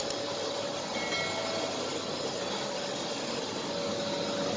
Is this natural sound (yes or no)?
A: yes